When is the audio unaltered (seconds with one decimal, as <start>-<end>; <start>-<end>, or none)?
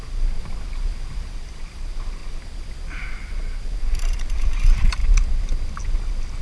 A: 0.4-1.3; 2.2-3.6; 5.0-6.4